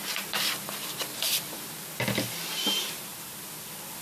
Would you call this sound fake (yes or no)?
yes